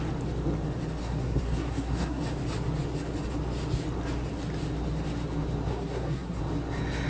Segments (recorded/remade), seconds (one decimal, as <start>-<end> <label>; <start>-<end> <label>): 0.0-1.0 recorded; 1.0-2.2 remade; 2.2-5.7 recorded; 5.7-6.4 remade; 6.4-7.1 recorded